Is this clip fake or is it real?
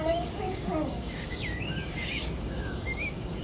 fake